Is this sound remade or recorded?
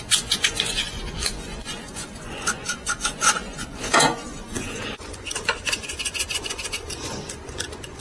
remade